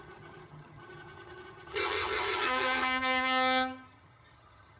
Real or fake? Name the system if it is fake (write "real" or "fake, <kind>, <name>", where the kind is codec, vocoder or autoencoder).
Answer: fake, vocoder, HiFi-GAN